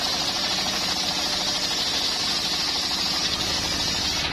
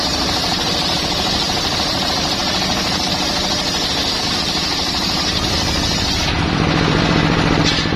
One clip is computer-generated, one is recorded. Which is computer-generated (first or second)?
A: second